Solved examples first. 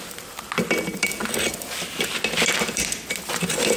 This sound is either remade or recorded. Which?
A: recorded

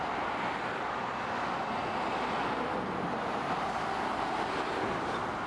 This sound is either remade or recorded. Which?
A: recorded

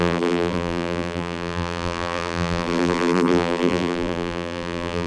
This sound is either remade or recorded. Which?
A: remade